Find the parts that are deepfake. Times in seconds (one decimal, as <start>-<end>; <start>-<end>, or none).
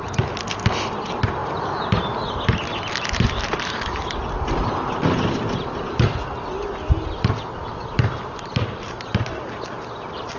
none